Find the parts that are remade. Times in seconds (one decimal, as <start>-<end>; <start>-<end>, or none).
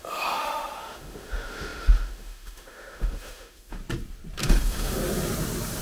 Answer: 0.0-3.8; 4.4-5.0